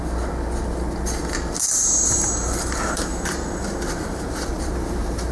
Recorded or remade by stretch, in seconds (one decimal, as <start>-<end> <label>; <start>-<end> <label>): 0.0-1.6 recorded; 1.6-3.1 remade; 3.1-3.9 recorded; 3.9-5.3 remade